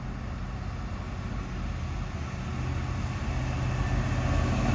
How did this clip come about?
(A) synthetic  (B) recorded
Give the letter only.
B